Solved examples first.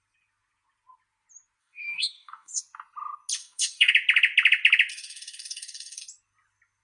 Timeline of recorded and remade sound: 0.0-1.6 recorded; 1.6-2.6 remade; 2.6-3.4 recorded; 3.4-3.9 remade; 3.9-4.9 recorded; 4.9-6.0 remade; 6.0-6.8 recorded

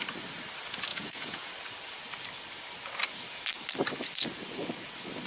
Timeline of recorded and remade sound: 0.0-0.9 recorded; 0.9-1.5 remade; 1.5-5.3 recorded

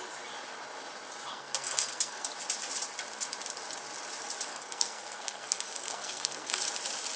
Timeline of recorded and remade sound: 0.0-1.3 recorded; 1.3-2.3 remade; 2.3-4.5 recorded; 4.5-6.6 remade; 6.6-7.2 recorded

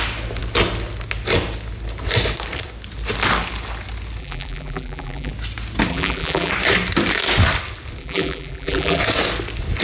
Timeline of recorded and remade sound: 0.0-4.2 recorded; 4.2-5.3 remade; 5.3-5.9 recorded; 5.9-6.5 remade; 6.5-8.0 recorded; 8.0-9.0 remade; 9.0-9.8 recorded

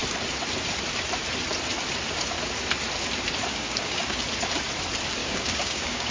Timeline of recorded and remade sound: 0.0-3.5 recorded; 3.5-4.2 remade; 4.2-5.2 recorded; 5.2-6.1 remade

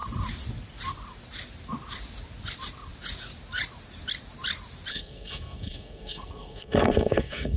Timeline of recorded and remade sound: 0.0-4.9 recorded; 4.9-7.6 remade